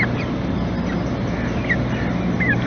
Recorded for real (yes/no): yes